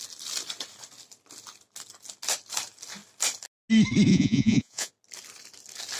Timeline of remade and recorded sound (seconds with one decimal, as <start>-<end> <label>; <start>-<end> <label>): 0.0-4.1 recorded; 4.1-4.9 remade; 4.9-6.0 recorded